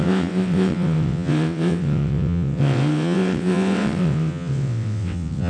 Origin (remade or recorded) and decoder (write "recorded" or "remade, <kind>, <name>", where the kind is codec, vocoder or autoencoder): remade, vocoder, WaveNeXt